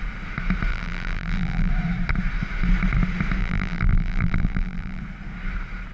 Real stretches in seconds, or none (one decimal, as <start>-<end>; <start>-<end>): 0.0-0.7; 1.7-3.4; 5.0-5.9